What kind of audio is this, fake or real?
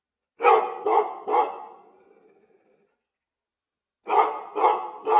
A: real